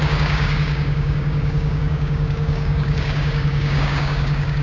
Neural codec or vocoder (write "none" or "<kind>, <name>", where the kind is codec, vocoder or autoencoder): codec, DAC